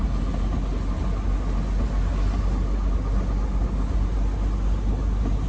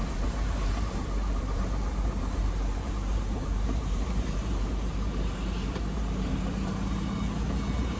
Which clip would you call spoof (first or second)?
second